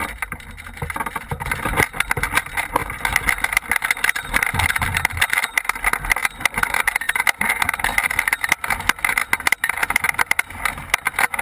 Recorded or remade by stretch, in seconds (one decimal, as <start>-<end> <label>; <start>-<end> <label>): 0.0-11.4 recorded